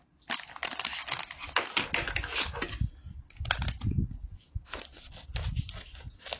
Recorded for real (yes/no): yes